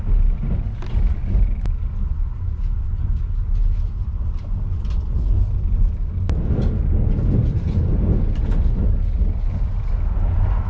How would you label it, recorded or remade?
recorded